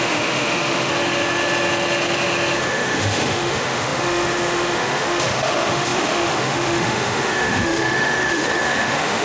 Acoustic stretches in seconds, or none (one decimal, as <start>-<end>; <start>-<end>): 0.9-2.7